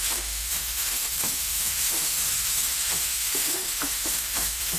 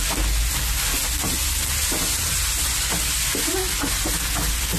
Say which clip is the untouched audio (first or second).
second